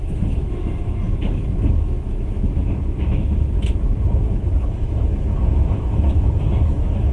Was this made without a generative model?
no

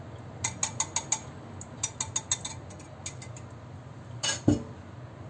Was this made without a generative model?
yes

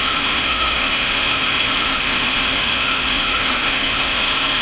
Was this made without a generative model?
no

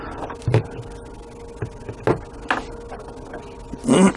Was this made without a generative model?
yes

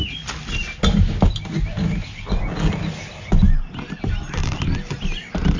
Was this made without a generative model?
yes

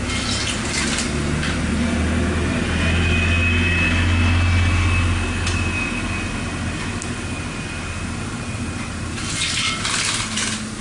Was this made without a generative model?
yes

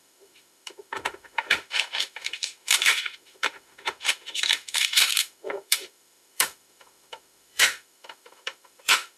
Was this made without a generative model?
no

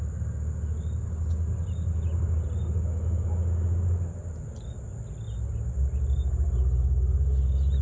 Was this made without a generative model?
yes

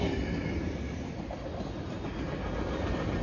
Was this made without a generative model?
yes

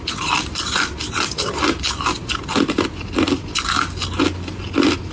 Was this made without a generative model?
yes